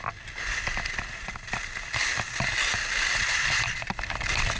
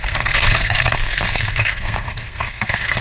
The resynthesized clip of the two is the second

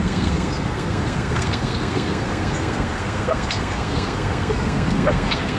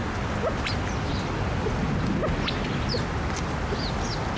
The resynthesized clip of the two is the first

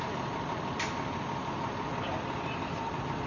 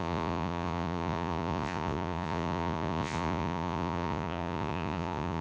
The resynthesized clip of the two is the second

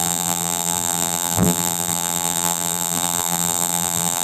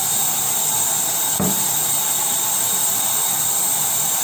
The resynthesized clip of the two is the first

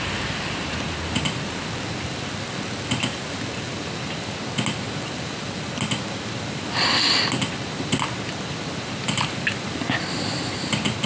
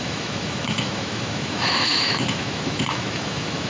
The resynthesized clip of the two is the second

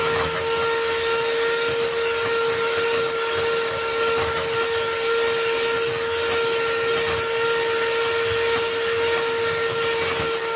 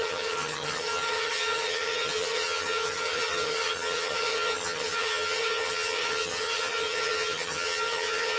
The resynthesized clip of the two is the second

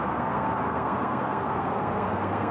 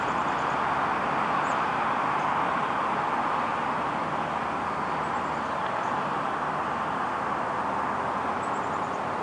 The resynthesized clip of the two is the first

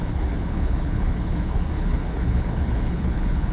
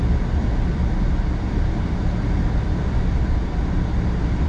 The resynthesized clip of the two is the first